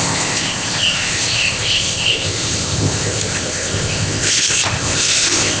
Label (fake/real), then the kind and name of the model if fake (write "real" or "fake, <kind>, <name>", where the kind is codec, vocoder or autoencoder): fake, codec, ZipCodec